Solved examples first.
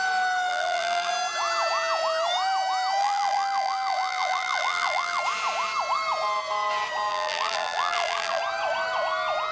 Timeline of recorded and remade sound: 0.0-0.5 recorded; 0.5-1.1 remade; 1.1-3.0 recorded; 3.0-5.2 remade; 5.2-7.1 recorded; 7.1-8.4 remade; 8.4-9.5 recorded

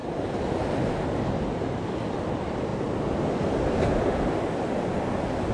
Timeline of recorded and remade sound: 0.0-2.3 recorded; 2.3-2.7 remade; 2.7-5.5 recorded

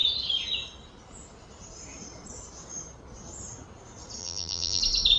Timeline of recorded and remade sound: 0.0-4.2 recorded; 4.2-4.8 remade; 4.8-5.2 recorded

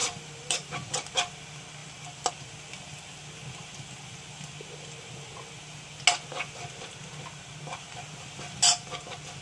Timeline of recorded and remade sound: 0.0-0.7 remade; 0.7-1.8 recorded; 1.8-2.3 remade; 2.3-9.4 recorded

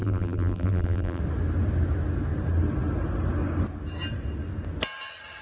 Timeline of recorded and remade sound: 0.0-1.2 remade; 1.2-5.4 recorded

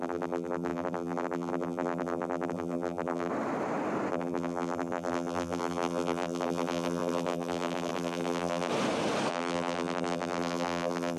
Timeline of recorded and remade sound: 0.0-3.3 remade; 3.3-4.1 recorded; 4.1-8.7 remade; 8.7-9.3 recorded; 9.3-11.2 remade